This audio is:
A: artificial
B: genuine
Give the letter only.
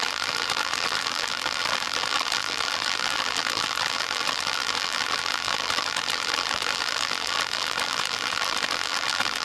A